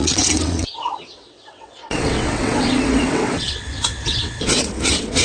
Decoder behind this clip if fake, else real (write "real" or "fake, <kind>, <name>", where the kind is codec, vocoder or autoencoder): fake, vocoder, WaveNeXt